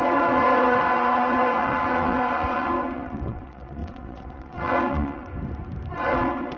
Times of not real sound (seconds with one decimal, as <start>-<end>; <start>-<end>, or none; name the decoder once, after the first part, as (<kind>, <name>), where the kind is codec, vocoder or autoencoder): 0.0-5.3 (vocoder, WaveNeXt); 5.9-6.6